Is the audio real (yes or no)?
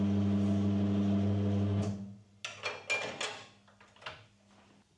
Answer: yes